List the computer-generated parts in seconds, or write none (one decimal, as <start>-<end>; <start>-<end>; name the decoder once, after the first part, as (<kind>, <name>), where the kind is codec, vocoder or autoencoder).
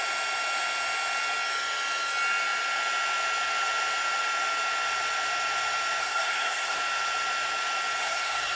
6.0-6.8 (codec, SNAC); 8.0-8.6